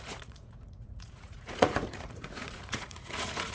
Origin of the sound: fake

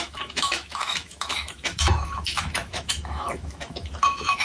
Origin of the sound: fake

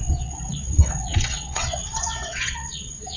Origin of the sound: fake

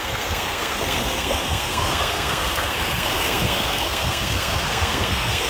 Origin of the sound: fake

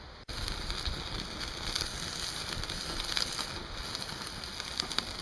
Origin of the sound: real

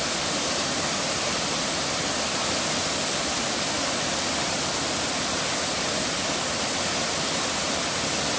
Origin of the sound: real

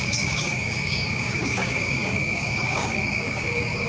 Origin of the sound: fake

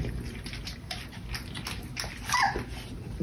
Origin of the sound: real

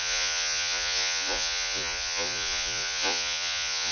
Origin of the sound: fake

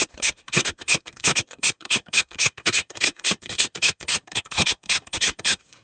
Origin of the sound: fake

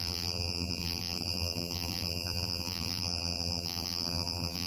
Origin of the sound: fake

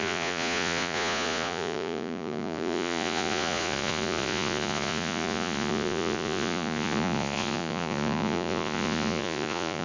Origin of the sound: fake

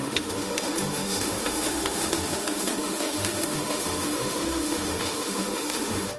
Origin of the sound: fake